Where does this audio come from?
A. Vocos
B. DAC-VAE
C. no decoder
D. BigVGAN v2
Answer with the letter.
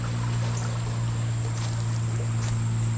C